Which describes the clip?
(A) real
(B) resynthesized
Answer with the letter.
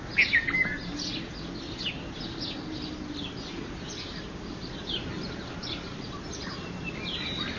A